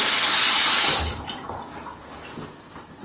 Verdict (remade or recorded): recorded